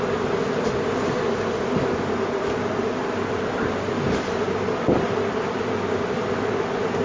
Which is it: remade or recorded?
remade